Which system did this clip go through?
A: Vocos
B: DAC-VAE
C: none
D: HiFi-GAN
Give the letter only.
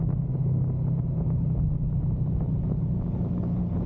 C